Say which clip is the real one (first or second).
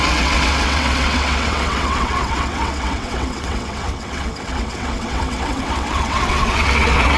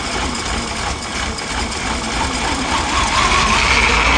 second